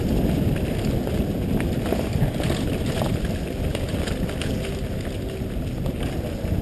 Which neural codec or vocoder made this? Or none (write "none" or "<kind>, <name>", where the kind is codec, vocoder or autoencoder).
none